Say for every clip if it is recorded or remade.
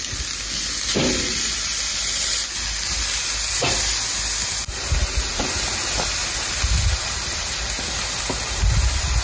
recorded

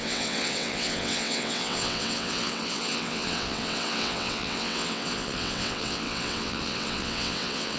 remade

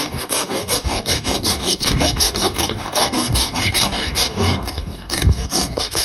remade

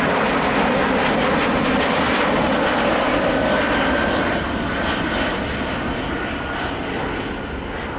recorded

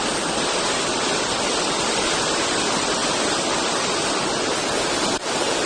recorded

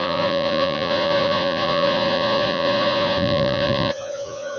remade